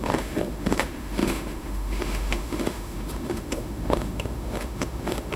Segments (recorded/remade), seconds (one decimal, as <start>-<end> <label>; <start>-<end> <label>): 0.0-5.4 remade